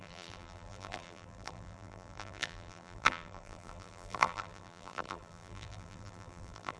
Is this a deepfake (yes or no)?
yes